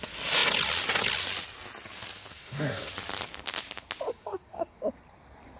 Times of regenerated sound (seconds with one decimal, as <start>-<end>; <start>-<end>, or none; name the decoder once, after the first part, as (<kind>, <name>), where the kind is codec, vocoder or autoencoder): 2.3-2.9 (codec, SNAC); 4.1-4.8